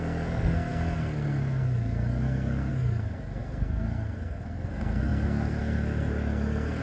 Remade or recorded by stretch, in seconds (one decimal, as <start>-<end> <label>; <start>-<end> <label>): 0.0-6.8 remade